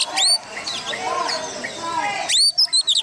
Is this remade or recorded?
recorded